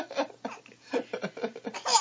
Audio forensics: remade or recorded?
recorded